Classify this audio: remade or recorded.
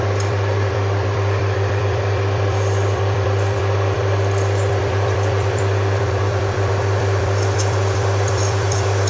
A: remade